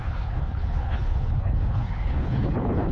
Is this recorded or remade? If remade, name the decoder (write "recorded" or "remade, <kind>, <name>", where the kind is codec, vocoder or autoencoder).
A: remade, codec, HILCodec